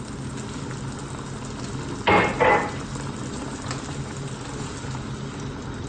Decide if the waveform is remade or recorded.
recorded